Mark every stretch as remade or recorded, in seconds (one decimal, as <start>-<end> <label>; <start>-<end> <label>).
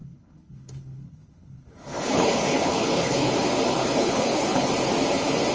0.0-3.3 remade; 3.3-3.7 recorded; 3.7-4.7 remade; 4.7-5.5 recorded